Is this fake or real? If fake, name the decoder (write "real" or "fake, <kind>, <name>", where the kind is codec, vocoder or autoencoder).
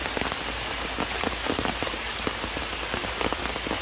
real